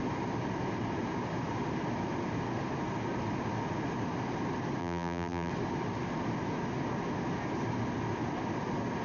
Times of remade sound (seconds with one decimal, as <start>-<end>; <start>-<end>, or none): 4.8-5.5